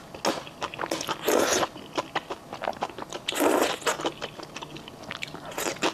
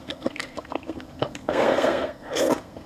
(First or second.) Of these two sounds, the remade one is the second